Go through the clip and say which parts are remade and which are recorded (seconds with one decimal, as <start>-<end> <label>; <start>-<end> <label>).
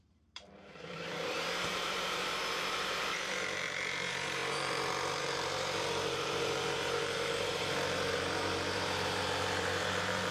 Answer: 0.0-10.3 remade